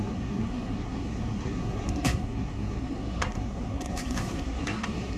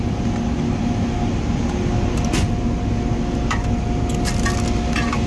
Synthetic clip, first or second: first